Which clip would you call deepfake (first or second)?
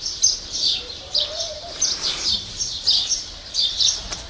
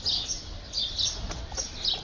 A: first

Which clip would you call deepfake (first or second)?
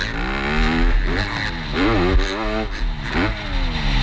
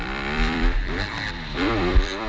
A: second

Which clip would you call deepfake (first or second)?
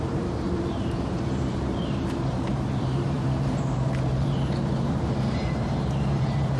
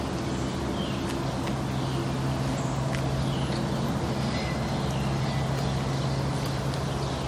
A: first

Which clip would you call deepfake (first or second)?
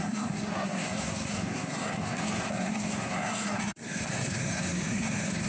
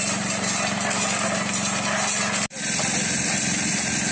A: first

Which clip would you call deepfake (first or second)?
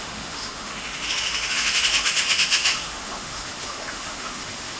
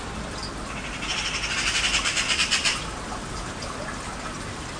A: first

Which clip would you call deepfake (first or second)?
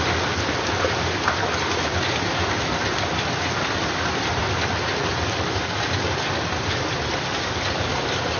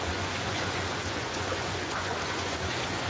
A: second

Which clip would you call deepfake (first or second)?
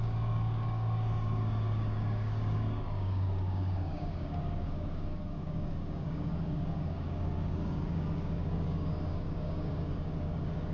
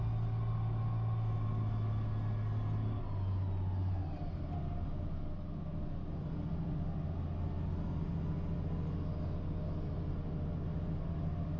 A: first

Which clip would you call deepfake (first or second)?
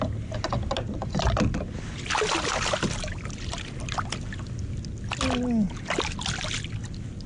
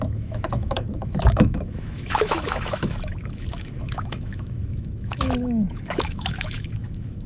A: second